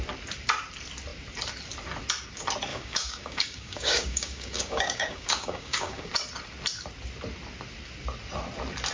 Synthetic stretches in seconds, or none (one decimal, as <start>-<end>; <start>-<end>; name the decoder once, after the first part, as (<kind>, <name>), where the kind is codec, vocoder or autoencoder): 2.7-6.1 (codec, DAC)